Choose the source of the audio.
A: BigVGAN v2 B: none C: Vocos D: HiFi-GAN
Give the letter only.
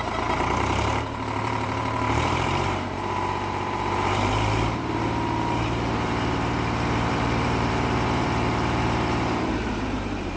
A